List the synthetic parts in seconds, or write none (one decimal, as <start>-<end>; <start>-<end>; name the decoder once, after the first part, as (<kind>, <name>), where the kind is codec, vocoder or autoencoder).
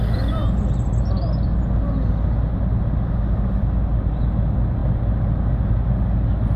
none